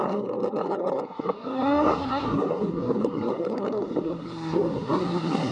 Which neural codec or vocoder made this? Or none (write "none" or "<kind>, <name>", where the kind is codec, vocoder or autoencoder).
codec, SNAC